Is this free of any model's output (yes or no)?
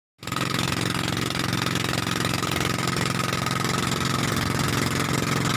yes